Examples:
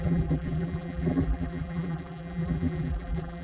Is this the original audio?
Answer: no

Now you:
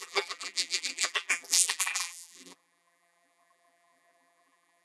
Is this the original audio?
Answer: no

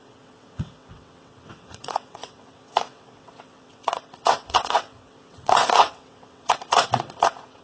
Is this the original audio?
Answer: no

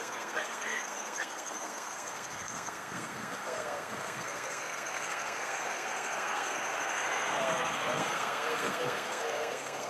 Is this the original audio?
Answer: no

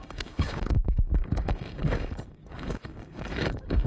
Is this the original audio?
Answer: no